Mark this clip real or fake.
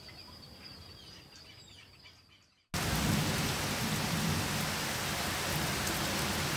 real